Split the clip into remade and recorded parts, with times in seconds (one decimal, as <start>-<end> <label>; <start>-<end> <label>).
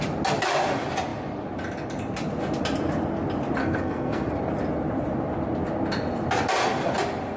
0.0-3.6 recorded; 3.6-4.3 remade; 4.3-7.4 recorded